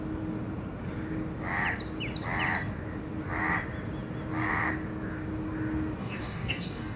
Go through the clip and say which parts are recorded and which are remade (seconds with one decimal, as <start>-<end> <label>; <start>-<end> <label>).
0.0-6.0 recorded; 6.0-7.0 remade